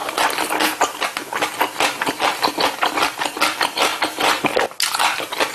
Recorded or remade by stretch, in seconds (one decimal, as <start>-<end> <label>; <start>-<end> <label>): 0.0-5.5 recorded